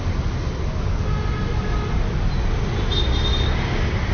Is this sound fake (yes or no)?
no